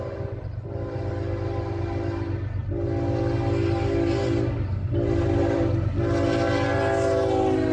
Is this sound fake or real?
real